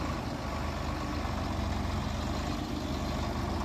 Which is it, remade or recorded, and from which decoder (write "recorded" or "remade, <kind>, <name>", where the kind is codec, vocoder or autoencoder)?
recorded